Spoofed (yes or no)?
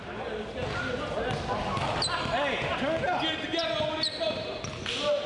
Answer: no